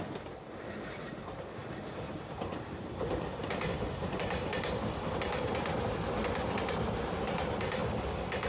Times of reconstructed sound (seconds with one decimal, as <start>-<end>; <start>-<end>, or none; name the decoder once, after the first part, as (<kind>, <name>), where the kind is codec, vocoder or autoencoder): 1.6-5.1 (vocoder, BigVGAN v2); 7.8-8.5

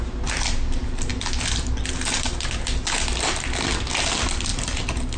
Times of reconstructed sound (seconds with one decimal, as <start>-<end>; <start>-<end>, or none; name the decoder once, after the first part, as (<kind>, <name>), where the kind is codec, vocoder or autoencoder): 4.5-5.2 (vocoder, BigVGAN v2)

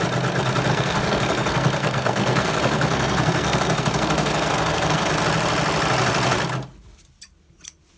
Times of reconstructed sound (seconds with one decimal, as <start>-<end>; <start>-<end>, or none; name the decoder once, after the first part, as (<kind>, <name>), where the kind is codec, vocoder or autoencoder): 0.7-5.1 (codec, SNAC)

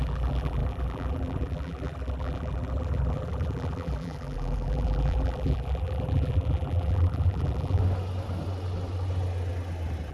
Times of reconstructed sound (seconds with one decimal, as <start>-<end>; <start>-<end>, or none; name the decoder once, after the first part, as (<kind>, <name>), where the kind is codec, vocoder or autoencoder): 0.0-7.8 (vocoder, BigVGAN v2)

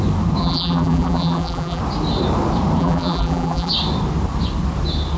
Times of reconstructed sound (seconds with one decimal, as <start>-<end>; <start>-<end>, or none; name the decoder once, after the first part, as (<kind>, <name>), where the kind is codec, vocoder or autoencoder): 0.4-1.8 (vocoder, BigVGAN v2); 2.8-3.7

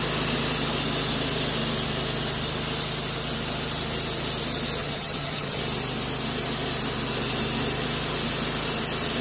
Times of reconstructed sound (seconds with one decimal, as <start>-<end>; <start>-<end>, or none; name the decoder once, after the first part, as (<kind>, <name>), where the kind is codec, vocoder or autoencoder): 4.8-5.6 (vocoder, HiFi-GAN)

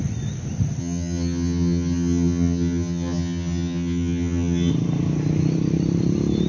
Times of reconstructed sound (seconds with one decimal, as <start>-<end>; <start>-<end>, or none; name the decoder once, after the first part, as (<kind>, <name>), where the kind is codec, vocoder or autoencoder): 0.8-4.7 (vocoder, HiFi-GAN)

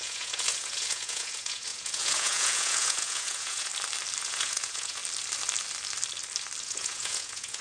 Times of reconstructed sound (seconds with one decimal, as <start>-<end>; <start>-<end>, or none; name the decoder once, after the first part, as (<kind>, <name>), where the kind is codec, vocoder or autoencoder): 0.0-3.7 (vocoder, Vocos); 4.2-5.0; 6.6-7.6